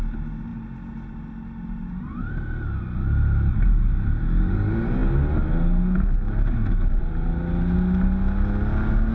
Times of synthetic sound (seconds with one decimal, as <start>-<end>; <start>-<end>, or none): none